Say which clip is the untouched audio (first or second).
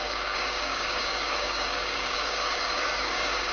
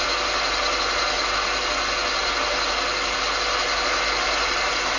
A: second